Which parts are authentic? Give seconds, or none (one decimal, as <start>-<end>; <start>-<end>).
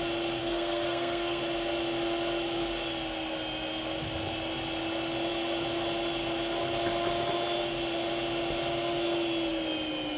0.0-0.4; 1.4-10.2